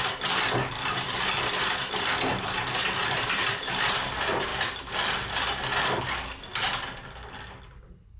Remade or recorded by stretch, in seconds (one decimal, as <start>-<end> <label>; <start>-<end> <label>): 0.0-3.0 recorded; 3.0-4.1 remade; 4.1-8.2 recorded